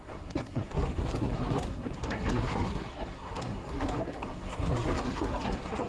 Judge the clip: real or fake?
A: fake